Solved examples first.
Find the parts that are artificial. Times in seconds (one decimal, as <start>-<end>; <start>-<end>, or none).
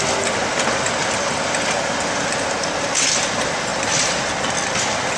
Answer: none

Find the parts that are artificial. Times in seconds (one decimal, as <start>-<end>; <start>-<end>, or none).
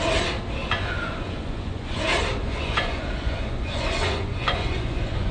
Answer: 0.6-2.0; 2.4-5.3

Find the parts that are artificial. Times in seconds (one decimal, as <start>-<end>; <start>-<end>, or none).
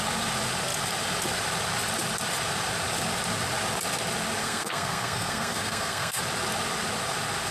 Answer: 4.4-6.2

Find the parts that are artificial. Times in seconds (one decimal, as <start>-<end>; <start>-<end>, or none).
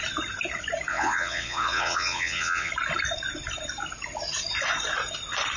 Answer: 0.9-2.7